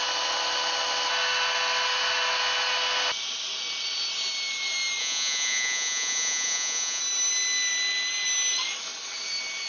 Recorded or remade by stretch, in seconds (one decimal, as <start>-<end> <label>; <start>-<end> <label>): 0.0-5.0 recorded; 5.0-7.0 remade; 7.0-9.7 recorded